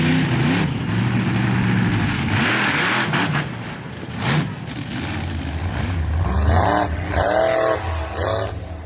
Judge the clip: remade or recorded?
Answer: recorded